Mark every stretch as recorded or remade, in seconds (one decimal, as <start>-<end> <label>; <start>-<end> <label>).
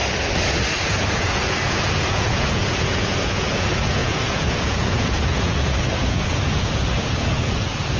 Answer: 0.0-0.8 recorded; 0.8-8.0 remade